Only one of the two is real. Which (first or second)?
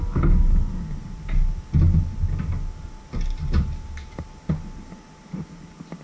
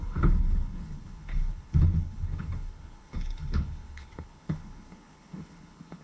first